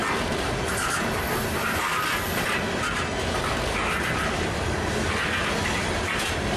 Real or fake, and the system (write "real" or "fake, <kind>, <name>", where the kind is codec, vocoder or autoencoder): real